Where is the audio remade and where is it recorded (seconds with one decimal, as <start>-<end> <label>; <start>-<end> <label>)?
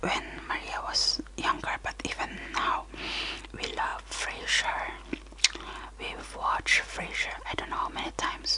0.0-1.3 remade; 1.3-6.7 recorded; 6.7-7.6 remade; 7.6-8.6 recorded